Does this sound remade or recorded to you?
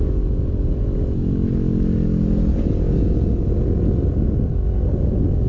recorded